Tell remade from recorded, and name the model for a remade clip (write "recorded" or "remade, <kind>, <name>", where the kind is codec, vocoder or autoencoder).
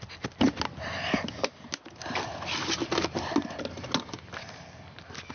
recorded